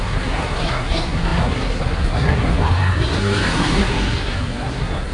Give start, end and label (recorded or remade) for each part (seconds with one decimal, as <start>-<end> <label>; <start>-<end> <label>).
0.0-5.1 remade